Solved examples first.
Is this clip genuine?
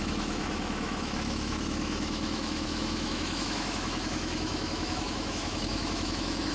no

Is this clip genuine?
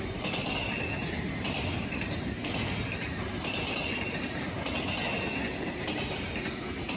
yes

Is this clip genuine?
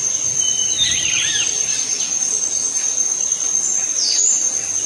yes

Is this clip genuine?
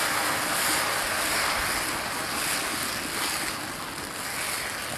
yes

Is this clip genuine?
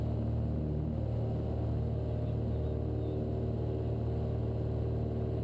yes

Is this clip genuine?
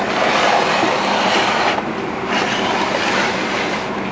yes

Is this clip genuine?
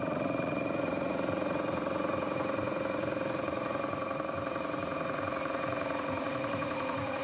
no